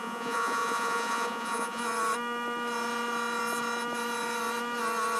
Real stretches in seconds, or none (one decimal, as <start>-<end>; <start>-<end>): 1.8-5.2